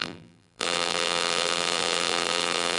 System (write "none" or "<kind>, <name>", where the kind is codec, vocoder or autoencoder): vocoder, BigVGAN v2